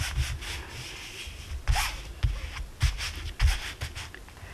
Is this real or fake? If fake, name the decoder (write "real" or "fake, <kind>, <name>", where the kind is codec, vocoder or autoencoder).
real